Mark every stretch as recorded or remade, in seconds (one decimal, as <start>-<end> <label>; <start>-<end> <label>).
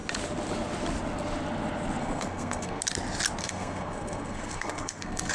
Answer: 0.0-2.0 recorded; 2.0-2.8 remade; 2.8-3.4 recorded; 3.4-5.3 remade